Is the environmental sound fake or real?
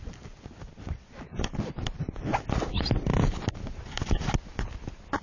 real